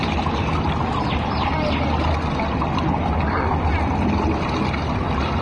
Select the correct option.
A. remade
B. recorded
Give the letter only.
B